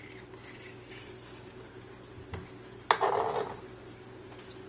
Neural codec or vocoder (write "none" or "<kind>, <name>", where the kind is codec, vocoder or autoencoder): none